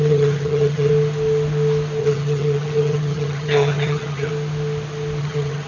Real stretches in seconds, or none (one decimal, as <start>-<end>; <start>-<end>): 0.9-2.0; 4.3-5.2